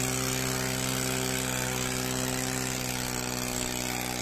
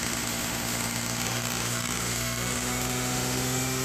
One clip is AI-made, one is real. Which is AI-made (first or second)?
second